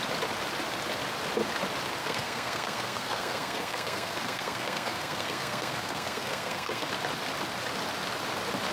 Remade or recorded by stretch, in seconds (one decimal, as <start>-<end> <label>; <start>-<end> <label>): 0.0-2.0 recorded; 2.0-6.9 remade; 6.9-8.7 recorded